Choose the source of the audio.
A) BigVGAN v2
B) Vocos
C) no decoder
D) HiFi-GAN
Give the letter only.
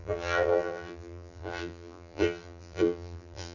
A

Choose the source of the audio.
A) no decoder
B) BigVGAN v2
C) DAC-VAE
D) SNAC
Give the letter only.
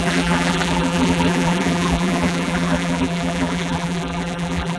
B